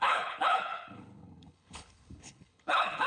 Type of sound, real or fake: fake